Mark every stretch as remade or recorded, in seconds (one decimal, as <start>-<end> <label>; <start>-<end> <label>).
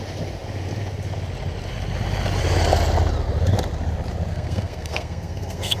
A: 0.0-4.3 recorded; 4.3-5.8 remade